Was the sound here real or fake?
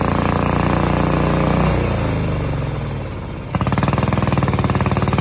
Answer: real